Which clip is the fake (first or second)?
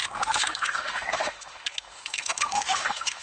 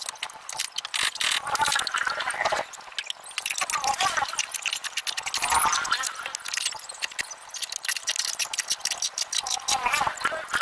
first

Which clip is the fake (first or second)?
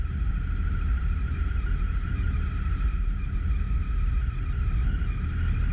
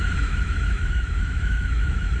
second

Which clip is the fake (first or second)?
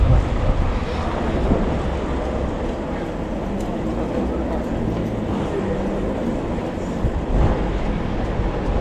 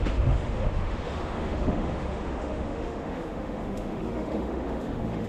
second